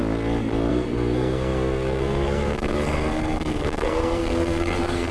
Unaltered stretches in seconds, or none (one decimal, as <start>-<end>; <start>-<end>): 0.0-0.7